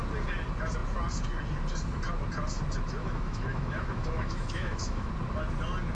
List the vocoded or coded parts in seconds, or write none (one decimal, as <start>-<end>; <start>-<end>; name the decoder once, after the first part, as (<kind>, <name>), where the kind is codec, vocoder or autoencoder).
3.0-5.1 (autoencoder, DAC-VAE)